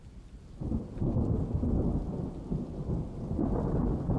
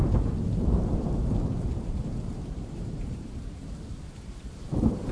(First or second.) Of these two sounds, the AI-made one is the second